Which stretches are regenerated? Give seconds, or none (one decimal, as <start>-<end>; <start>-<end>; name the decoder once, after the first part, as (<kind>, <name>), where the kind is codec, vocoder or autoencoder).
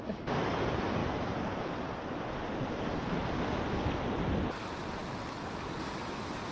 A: none